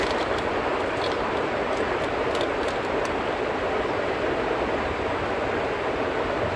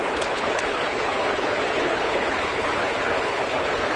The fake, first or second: second